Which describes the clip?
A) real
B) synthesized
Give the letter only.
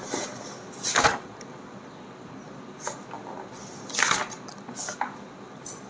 A